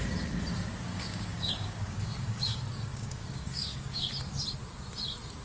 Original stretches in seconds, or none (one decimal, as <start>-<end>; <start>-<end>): 0.0-0.9; 4.1-5.4